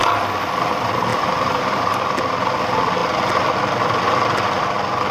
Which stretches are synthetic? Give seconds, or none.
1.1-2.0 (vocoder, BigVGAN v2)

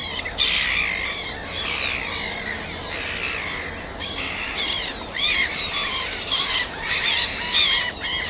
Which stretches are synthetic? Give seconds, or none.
4.1-8.3 (vocoder, BigVGAN v2)

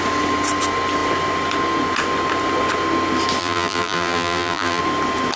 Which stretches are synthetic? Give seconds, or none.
3.4-4.8 (vocoder, BigVGAN v2)